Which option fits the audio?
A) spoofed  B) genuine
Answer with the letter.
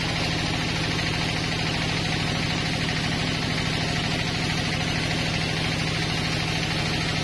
B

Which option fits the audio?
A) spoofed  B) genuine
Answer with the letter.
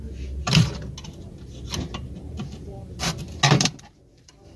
B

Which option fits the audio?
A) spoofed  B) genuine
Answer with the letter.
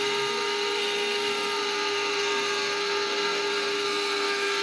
A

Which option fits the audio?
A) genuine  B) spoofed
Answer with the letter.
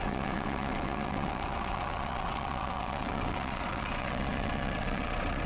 B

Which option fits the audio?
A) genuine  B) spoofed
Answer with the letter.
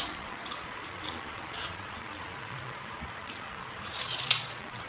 B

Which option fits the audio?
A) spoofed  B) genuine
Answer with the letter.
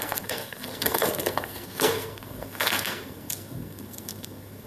A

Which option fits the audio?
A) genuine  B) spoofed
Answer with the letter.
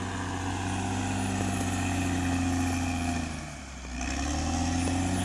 A